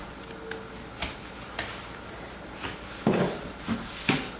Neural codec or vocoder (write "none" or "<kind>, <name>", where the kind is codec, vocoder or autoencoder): none